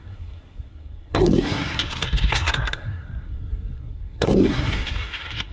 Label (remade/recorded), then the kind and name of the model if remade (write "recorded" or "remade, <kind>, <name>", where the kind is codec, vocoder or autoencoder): remade, codec, SNAC